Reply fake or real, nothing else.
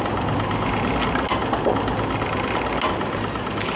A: real